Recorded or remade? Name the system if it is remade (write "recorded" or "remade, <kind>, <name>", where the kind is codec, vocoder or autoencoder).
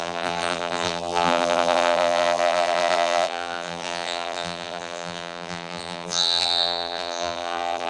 remade, vocoder, BigVGAN v2